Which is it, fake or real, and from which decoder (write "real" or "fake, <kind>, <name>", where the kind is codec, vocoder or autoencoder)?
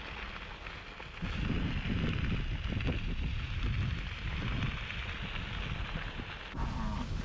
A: real